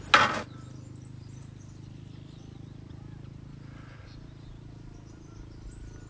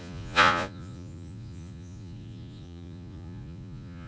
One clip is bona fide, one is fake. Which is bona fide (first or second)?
first